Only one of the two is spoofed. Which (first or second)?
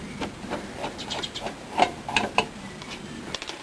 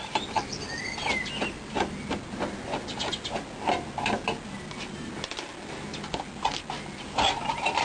first